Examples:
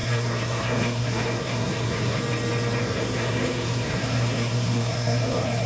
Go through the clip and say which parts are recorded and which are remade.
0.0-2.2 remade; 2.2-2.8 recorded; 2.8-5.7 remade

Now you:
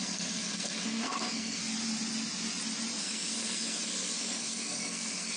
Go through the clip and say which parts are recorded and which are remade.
0.0-1.6 remade; 1.6-3.0 recorded; 3.0-5.4 remade

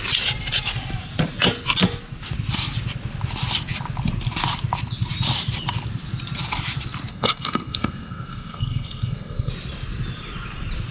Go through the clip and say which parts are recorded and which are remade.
0.0-7.1 recorded; 7.1-9.5 remade; 9.5-10.9 recorded

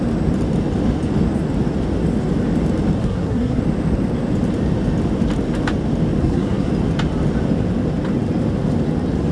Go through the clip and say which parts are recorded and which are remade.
0.0-3.0 recorded; 3.0-3.6 remade; 3.6-6.2 recorded; 6.2-6.7 remade; 6.7-9.3 recorded

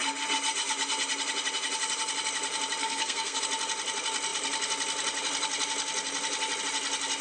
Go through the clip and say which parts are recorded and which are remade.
0.0-2.8 recorded; 2.8-3.4 remade; 3.4-7.2 recorded

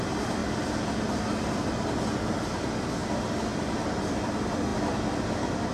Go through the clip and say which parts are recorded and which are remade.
0.0-5.7 recorded

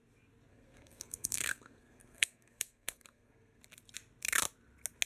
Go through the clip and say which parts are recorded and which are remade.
0.0-0.5 recorded; 0.5-3.6 remade; 3.6-5.1 recorded